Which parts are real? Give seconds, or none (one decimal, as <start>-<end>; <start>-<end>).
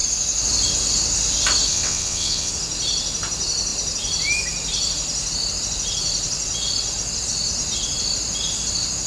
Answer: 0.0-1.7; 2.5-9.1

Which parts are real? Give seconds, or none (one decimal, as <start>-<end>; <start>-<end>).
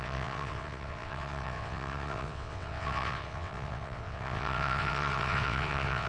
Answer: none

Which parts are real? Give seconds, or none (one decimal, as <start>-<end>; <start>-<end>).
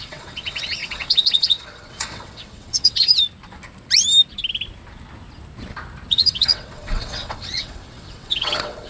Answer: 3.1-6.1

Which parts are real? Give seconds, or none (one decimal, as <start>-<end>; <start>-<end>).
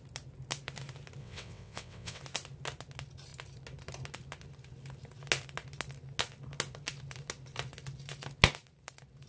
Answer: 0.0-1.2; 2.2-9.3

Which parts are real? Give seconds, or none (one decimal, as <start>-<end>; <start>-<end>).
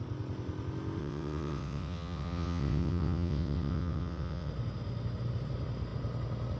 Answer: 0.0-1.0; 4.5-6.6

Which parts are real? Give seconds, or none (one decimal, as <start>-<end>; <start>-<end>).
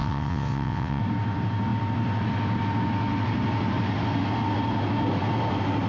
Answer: 1.0-5.9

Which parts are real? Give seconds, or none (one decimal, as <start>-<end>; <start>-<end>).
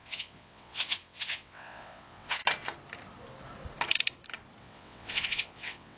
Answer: 2.4-4.6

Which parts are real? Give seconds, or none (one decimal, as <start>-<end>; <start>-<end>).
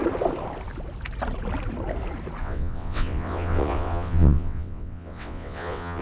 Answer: 0.0-2.4